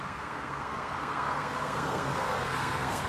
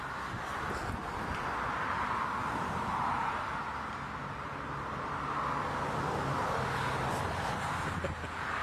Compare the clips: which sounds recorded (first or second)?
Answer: second